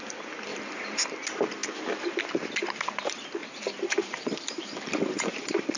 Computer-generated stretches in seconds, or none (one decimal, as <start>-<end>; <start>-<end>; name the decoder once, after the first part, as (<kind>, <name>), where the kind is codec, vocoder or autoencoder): 0.5-1.0 (vocoder, BigVGAN v2); 3.4-5.8